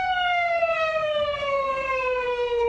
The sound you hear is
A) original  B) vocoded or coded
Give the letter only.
B